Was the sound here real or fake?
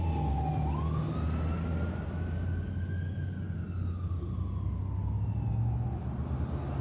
real